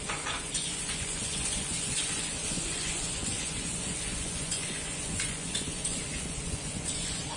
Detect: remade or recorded remade